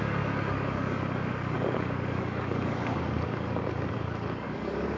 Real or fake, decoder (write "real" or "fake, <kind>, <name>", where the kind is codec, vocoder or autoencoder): fake, codec, DAC